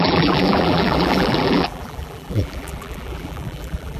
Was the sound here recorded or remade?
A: remade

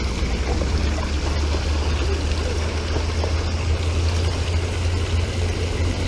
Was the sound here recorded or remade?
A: recorded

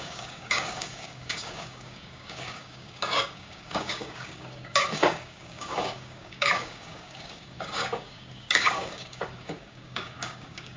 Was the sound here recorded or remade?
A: remade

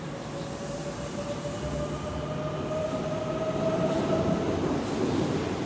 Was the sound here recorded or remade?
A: recorded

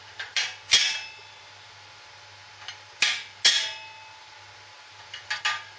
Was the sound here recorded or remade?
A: recorded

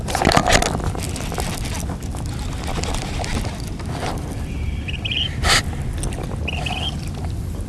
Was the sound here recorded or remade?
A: recorded